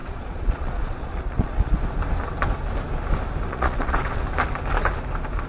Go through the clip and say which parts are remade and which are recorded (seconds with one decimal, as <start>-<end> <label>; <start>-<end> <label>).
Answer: 0.0-1.8 remade; 1.8-3.5 recorded; 3.5-4.3 remade; 4.3-5.5 recorded